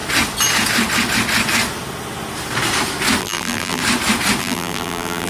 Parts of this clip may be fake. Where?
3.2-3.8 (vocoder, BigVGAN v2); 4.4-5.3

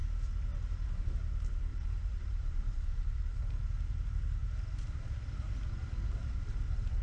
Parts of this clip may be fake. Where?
0.0-1.1 (vocoder, BigVGAN v2); 1.7-3.4

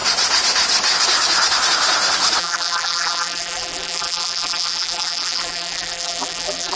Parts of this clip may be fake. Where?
2.4-6.8 (vocoder, BigVGAN v2)

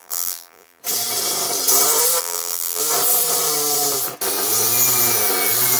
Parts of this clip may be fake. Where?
0.0-0.8 (vocoder, BigVGAN v2); 2.2-2.8

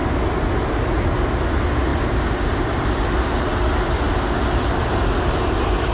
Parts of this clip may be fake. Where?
none